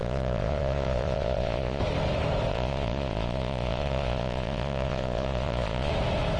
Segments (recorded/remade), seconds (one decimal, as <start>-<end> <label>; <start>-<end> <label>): 0.0-1.8 remade; 1.8-2.5 recorded; 2.5-5.9 remade; 5.9-6.4 recorded

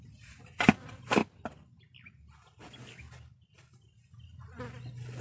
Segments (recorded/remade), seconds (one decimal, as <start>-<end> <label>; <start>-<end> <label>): 0.0-5.2 recorded

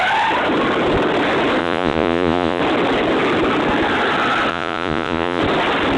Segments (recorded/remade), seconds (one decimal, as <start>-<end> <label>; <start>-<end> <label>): 0.0-1.6 recorded; 1.6-2.6 remade; 2.6-4.5 recorded; 4.5-5.4 remade; 5.4-6.0 recorded

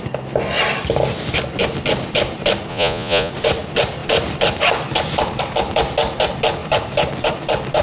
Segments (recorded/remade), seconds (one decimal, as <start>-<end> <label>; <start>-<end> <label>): 0.0-2.7 recorded; 2.7-3.3 remade; 3.3-7.8 recorded

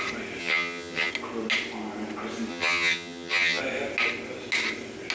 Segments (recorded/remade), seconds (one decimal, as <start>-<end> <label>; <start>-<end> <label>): 0.0-0.4 recorded; 0.4-1.1 remade; 1.1-2.5 recorded; 2.5-3.6 remade; 3.6-5.1 recorded

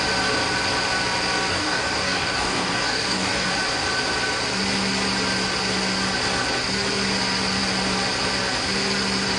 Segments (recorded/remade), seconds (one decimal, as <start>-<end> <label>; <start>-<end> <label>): 0.0-1.5 recorded; 1.5-3.5 remade; 3.5-9.4 recorded

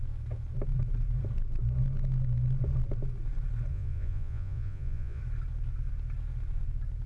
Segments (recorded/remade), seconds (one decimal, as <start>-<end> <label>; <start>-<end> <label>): 0.0-3.7 recorded; 3.7-5.2 remade; 5.2-7.1 recorded